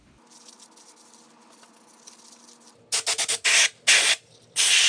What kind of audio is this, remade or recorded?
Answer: recorded